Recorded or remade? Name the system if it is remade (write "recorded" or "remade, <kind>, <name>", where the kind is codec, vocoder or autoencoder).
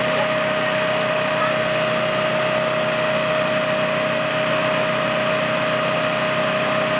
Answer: recorded